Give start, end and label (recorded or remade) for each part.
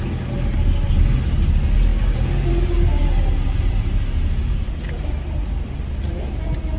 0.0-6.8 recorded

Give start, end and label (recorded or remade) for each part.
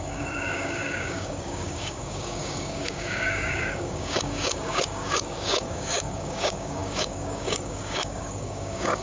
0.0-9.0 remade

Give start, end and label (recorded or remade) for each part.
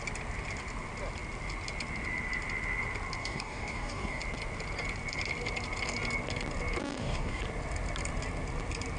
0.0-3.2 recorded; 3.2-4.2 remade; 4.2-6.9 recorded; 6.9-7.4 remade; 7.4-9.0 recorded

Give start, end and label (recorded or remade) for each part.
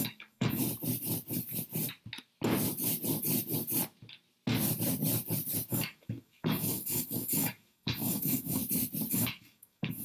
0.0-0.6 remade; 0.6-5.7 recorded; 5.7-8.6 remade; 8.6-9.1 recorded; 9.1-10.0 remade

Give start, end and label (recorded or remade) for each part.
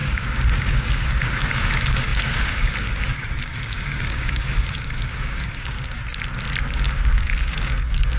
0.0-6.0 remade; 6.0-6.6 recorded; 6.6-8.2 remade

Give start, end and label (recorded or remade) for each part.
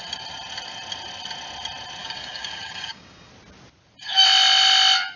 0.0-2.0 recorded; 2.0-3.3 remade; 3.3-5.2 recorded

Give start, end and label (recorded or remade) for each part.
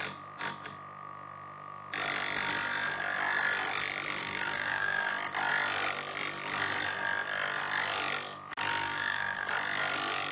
0.0-4.2 recorded; 4.2-5.1 remade; 5.1-8.8 recorded; 8.8-9.5 remade; 9.5-10.3 recorded